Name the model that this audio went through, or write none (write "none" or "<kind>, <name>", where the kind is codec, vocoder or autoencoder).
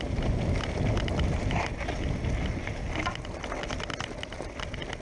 none